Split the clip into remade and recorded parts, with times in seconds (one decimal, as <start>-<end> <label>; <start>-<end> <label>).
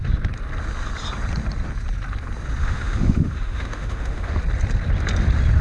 0.0-2.6 recorded; 2.6-4.4 remade; 4.4-5.6 recorded